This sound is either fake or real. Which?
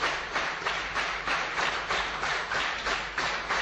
fake